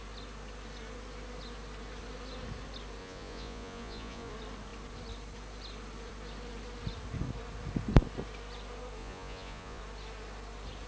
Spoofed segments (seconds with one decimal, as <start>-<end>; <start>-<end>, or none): 3.0-4.3; 9.0-9.8